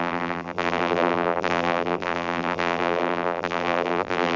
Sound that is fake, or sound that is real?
fake